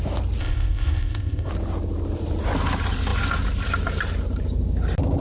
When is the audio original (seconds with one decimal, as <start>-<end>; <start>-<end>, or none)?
0.0-0.4; 1.5-5.2